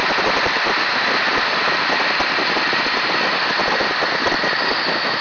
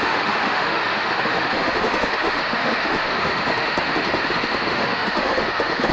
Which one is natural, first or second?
first